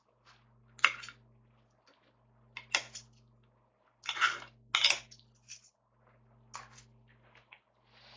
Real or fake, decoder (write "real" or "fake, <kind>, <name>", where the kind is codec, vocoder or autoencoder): real